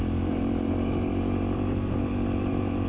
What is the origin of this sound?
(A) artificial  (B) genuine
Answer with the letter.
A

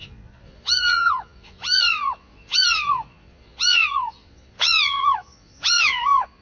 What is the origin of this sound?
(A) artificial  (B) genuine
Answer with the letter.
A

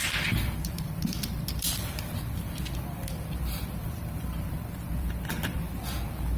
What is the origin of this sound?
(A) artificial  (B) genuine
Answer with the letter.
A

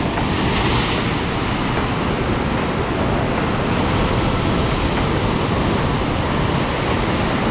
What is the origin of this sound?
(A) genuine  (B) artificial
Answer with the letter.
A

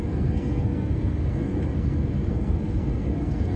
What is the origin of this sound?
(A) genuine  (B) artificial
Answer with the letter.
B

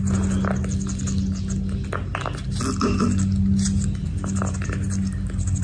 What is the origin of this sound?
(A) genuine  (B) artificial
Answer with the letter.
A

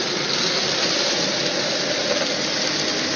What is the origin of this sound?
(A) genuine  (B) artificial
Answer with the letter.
A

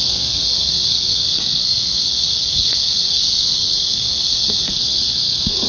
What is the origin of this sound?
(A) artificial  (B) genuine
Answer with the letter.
A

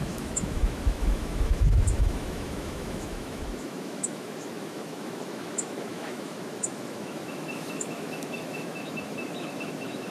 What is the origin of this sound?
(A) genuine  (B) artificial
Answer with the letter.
B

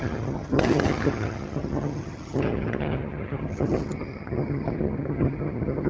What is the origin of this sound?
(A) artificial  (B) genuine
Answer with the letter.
A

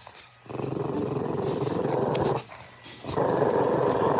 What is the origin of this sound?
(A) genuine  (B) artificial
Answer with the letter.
A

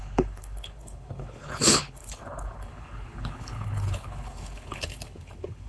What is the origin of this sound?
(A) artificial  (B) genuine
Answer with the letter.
A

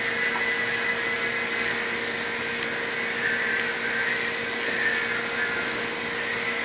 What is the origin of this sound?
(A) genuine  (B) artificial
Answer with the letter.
A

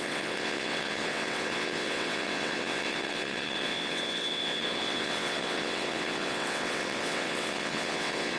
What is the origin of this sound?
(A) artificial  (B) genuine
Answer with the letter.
A